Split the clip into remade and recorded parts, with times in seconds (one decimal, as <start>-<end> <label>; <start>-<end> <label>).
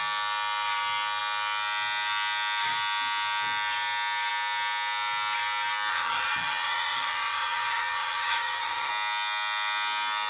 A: 0.0-5.9 recorded; 5.9-8.9 remade; 8.9-10.3 recorded